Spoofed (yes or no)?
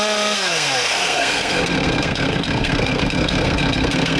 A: yes